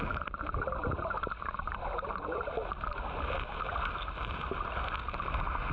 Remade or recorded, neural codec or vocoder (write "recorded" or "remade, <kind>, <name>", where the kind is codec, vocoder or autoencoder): recorded